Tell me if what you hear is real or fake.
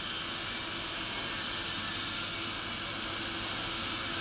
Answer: real